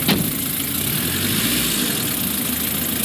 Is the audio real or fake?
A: real